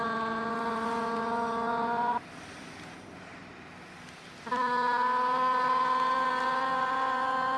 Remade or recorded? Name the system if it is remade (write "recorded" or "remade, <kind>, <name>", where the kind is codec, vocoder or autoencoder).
recorded